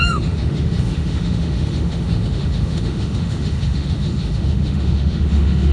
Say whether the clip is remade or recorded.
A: remade